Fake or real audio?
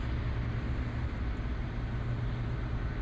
real